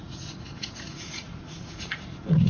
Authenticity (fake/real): fake